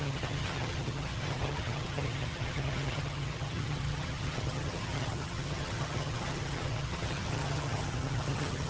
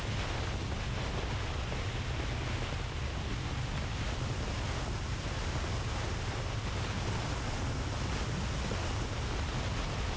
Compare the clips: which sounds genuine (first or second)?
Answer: second